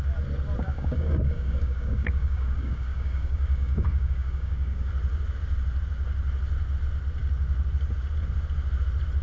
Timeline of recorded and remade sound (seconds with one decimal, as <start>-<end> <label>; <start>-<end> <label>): 0.0-0.6 recorded; 0.6-4.9 remade; 4.9-9.2 recorded